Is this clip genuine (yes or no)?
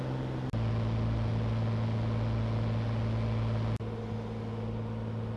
yes